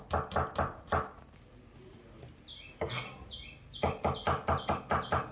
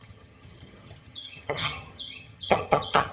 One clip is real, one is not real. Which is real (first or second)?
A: first